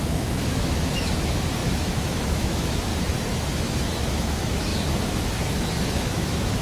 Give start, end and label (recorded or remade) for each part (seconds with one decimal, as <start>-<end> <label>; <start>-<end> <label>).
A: 0.0-2.9 remade; 2.9-3.5 recorded; 3.5-6.6 remade